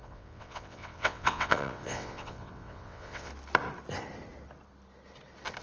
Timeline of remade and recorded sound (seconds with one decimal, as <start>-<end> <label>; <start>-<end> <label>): 0.0-3.3 remade; 3.3-5.6 recorded

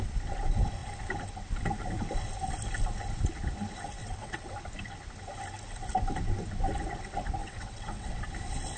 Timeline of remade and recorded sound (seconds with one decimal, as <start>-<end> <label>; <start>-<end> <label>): 0.0-4.0 recorded; 4.0-4.5 remade; 4.5-7.4 recorded; 7.4-8.2 remade; 8.2-8.8 recorded